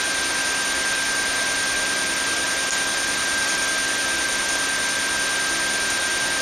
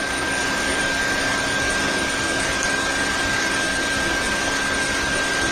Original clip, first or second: first